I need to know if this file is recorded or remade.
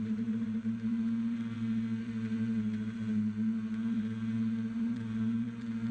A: remade